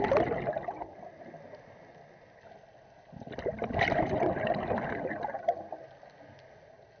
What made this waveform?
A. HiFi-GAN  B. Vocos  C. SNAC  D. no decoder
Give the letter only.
D